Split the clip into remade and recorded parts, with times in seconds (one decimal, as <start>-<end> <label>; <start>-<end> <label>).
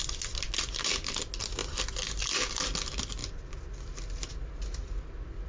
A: 0.0-5.5 recorded